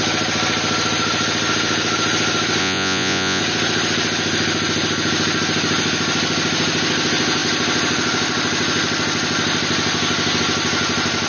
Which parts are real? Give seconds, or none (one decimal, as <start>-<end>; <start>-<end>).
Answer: 0.0-2.6; 3.4-11.3